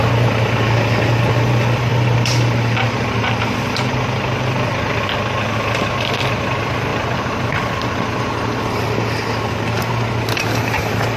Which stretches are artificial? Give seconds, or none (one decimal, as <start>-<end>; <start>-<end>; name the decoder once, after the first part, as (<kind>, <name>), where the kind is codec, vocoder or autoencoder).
1.9-5.0 (vocoder, BigVGAN v2); 6.9-9.3